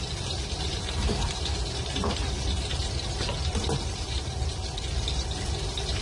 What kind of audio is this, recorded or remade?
remade